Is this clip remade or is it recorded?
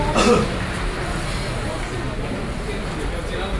recorded